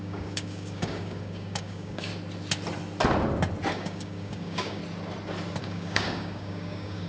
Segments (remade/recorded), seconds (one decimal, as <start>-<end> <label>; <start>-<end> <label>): 0.0-2.1 remade; 2.1-3.7 recorded; 3.7-4.8 remade; 4.8-5.6 recorded; 5.6-7.1 remade